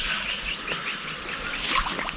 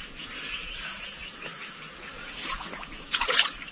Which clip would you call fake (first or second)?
second